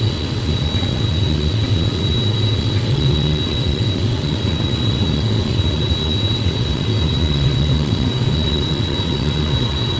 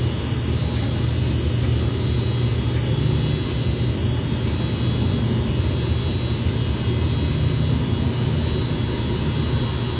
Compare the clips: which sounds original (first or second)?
second